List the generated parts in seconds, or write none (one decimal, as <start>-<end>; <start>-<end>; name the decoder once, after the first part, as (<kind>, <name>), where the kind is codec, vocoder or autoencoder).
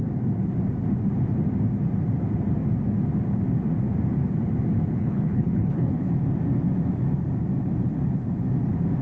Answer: 5.0-6.1 (codec, HILCodec)